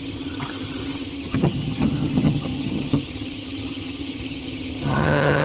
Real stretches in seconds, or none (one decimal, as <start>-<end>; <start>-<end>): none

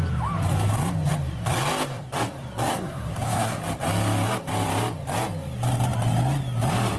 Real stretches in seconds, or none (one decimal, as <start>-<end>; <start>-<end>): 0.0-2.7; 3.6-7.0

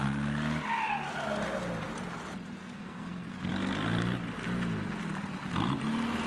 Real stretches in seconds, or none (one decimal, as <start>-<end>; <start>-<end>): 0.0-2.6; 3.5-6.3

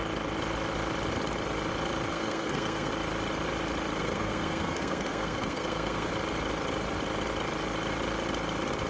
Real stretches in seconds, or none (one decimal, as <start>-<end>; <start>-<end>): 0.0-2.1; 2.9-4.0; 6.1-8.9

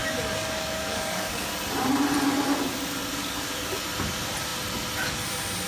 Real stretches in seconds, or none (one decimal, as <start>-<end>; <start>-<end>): 1.5-3.0; 3.8-5.7

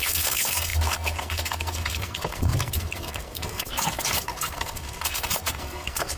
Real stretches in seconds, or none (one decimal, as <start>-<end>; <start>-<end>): none